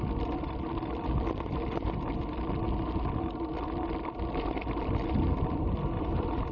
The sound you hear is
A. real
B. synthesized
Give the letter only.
A